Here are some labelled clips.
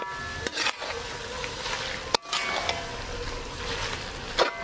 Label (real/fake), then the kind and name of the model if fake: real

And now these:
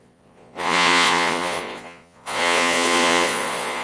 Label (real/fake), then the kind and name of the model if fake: fake, vocoder, Vocos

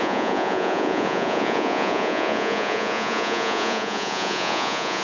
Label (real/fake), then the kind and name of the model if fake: fake, vocoder, Vocos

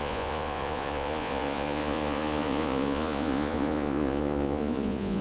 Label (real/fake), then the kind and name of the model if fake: fake, vocoder, Vocos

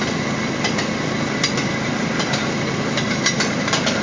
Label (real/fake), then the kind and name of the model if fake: real